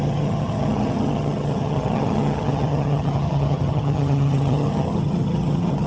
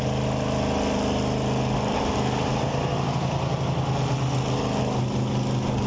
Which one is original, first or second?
second